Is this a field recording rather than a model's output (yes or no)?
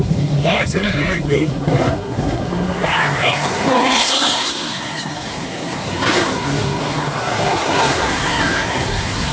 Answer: no